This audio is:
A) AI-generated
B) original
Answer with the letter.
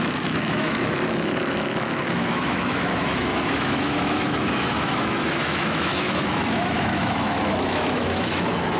A